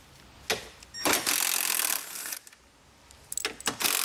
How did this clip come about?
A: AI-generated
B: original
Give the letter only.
B